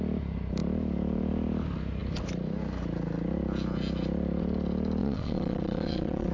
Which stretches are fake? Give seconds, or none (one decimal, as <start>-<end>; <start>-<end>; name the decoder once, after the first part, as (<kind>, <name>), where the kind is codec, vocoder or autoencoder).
5.0-6.3 (vocoder, WaveNeXt)